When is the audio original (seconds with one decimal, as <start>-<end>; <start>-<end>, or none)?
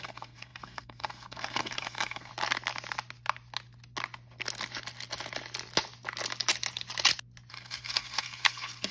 2.3-7.5